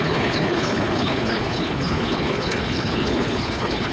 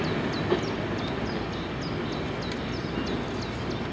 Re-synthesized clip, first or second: first